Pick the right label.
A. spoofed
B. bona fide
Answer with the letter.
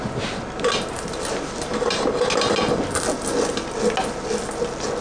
B